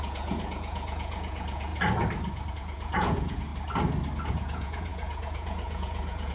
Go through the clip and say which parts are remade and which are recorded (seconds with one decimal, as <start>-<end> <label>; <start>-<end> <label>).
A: 0.0-1.7 remade; 1.7-2.5 recorded; 2.5-3.5 remade; 3.5-4.3 recorded; 4.3-6.3 remade

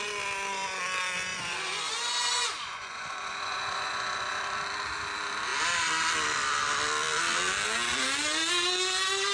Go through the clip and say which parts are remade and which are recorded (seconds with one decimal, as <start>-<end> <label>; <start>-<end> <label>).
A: 0.0-1.3 recorded; 1.3-4.4 remade; 4.4-9.3 recorded

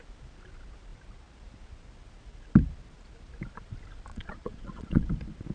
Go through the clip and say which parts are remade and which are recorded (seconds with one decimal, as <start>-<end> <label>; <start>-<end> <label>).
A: 0.0-4.1 recorded; 4.1-5.1 remade; 5.1-5.5 recorded

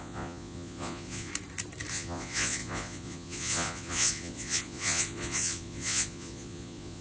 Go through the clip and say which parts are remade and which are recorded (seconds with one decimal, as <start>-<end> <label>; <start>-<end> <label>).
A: 0.0-1.3 remade; 1.3-1.9 recorded; 1.9-7.0 remade

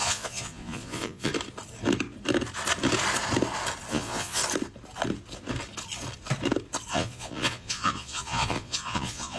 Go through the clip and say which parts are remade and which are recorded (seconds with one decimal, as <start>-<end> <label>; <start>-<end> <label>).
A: 0.0-1.3 remade; 1.3-3.9 recorded; 3.9-4.4 remade; 4.4-6.9 recorded; 6.9-9.4 remade

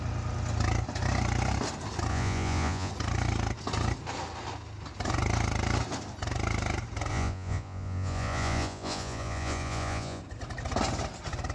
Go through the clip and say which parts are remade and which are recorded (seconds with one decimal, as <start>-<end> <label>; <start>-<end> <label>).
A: 0.0-2.1 recorded; 2.1-2.9 remade; 2.9-7.1 recorded; 7.1-10.2 remade; 10.2-11.5 recorded

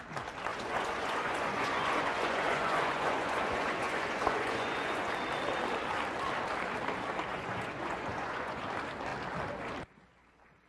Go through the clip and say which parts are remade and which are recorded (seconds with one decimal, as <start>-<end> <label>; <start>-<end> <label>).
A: 0.0-0.5 recorded; 0.5-5.1 remade; 5.1-7.3 recorded; 7.3-8.6 remade; 8.6-10.7 recorded